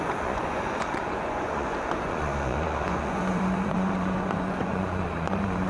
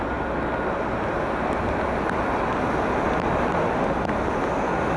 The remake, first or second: first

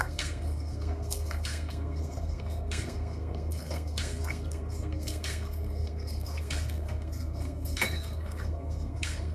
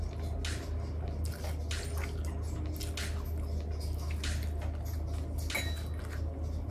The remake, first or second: first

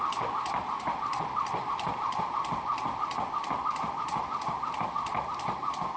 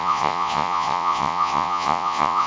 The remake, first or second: second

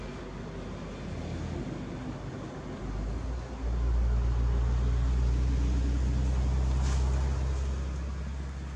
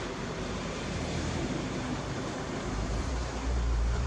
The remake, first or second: second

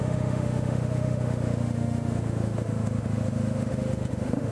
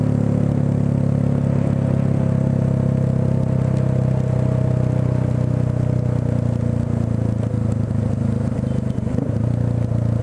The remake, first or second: first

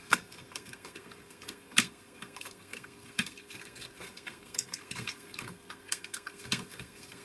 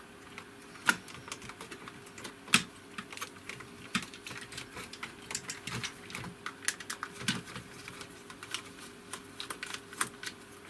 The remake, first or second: first